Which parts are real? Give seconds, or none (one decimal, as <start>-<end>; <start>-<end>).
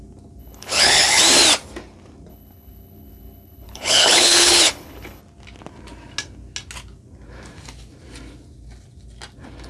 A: 0.0-0.4; 1.2-2.3; 5.2-9.7